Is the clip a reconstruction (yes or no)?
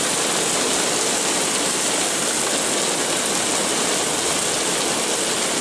no